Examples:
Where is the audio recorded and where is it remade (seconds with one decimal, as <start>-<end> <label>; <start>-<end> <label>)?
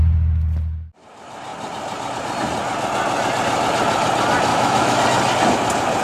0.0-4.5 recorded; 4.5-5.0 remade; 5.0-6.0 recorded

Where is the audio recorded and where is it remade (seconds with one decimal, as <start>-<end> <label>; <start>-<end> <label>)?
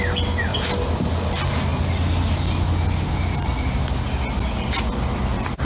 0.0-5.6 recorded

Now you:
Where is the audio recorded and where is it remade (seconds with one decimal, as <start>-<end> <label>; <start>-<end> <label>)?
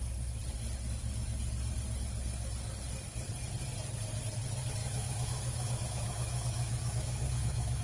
0.0-4.8 recorded; 4.8-7.8 remade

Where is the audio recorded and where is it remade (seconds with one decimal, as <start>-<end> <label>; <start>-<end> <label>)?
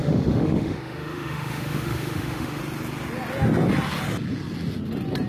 0.0-2.6 remade; 2.6-5.3 recorded